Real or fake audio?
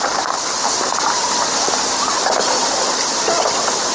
real